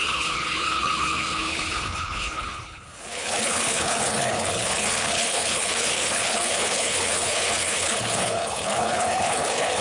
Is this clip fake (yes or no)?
yes